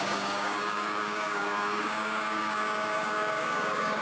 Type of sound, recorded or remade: remade